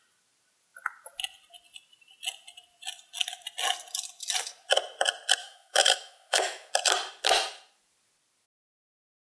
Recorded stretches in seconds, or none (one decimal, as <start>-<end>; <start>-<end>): 0.0-5.4; 6.7-9.2